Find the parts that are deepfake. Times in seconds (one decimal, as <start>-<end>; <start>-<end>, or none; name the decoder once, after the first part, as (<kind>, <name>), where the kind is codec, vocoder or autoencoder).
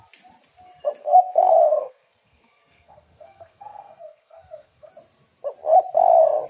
1.0-4.9 (codec, SNAC)